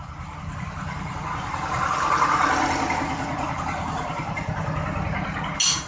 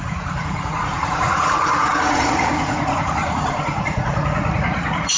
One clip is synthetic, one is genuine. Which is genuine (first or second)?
first